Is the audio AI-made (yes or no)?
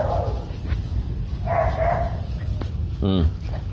no